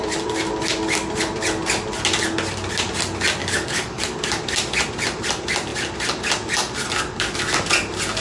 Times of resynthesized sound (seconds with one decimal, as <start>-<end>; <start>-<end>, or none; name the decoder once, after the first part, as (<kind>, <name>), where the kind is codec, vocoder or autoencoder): 3.4-4.0 (codec, DAC)